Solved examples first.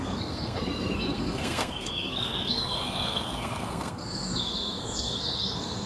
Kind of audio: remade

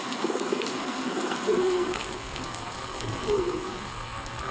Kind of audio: remade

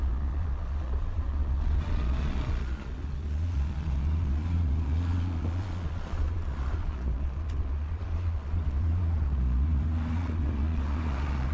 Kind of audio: remade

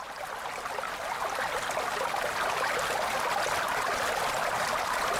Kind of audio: recorded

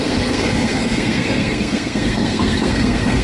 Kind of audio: remade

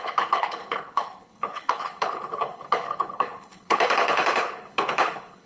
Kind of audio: remade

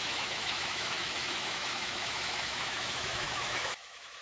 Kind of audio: remade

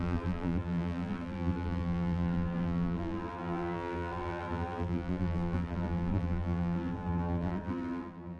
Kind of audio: remade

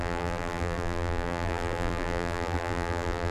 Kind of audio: remade